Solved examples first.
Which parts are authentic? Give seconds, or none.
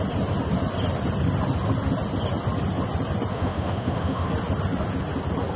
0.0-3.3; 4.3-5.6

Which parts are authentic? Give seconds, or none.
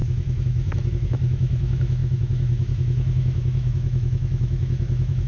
none